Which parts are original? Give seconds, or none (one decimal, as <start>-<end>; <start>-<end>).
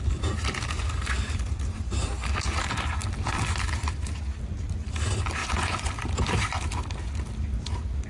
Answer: 0.0-5.4; 5.9-8.1